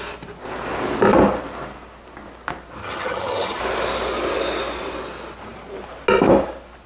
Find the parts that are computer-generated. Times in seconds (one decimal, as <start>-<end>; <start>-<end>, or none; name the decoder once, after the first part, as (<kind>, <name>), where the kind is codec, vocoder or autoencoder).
2.8-3.6 (vocoder, HiFi-GAN)